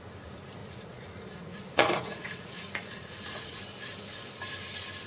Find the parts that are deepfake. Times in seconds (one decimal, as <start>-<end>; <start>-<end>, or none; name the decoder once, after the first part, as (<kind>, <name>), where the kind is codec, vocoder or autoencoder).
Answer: 0.6-3.6 (vocoder, Vocos)